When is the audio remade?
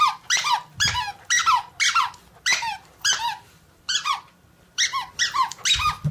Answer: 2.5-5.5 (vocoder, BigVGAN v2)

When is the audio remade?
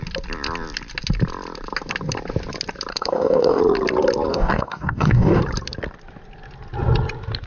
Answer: 2.9-3.6 (codec, DAC); 4.3-5.4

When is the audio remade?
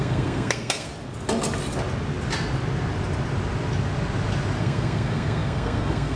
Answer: 0.0-0.9 (codec, SNAC); 4.6-6.2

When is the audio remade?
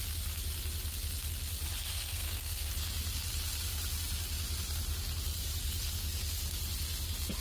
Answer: 1.9-2.7 (codec, SNAC)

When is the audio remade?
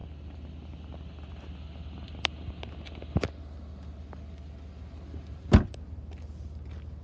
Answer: none